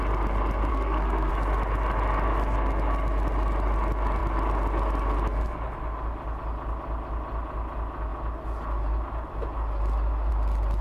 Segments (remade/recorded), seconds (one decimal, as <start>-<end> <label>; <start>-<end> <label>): 0.0-0.7 recorded; 0.7-1.3 remade; 1.3-10.8 recorded